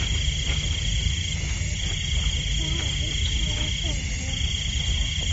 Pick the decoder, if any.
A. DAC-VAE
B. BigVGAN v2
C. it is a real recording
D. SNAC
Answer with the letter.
C